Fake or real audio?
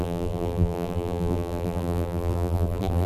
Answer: fake